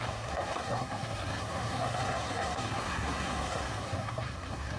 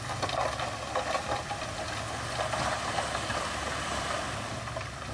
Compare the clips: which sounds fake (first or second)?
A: first